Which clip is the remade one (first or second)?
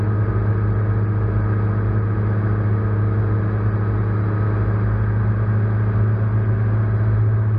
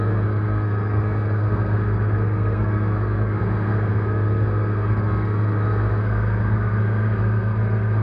second